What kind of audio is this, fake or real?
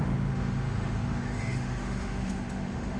fake